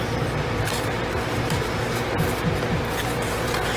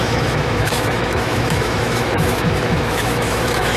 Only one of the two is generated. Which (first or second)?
second